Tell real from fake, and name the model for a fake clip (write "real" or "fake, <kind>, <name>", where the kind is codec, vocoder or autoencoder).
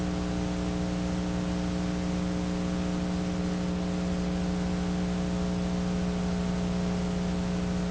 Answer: real